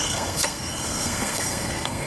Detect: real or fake fake